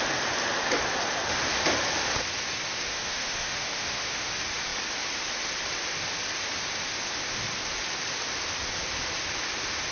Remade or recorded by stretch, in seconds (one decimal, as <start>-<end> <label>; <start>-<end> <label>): 0.0-2.9 recorded; 2.9-4.3 remade; 4.3-9.9 recorded